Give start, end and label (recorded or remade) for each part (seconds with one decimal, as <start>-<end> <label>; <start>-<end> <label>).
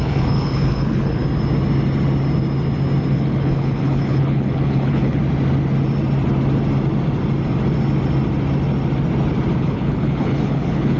0.0-1.2 remade; 1.2-3.1 recorded; 3.1-5.2 remade; 5.2-9.6 recorded; 9.6-11.0 remade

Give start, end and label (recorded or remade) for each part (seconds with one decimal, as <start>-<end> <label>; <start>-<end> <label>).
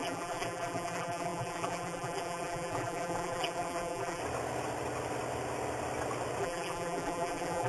0.0-4.2 remade; 4.2-6.4 recorded; 6.4-7.7 remade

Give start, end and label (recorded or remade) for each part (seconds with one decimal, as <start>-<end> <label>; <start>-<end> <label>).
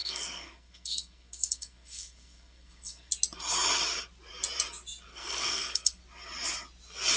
0.0-3.1 remade; 3.1-5.1 recorded; 5.1-6.0 remade; 6.0-7.2 recorded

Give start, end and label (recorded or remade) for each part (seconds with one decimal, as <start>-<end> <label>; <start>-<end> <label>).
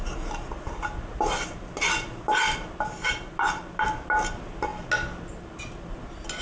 0.0-6.4 recorded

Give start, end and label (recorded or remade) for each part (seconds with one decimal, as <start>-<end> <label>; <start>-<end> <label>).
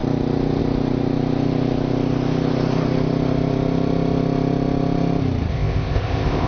0.0-5.5 recorded; 5.5-6.5 remade